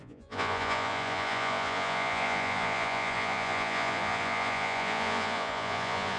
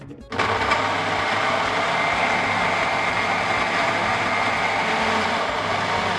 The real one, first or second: second